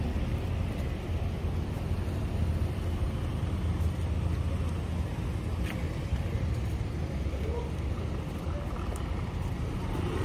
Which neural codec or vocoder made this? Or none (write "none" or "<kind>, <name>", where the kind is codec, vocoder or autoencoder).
none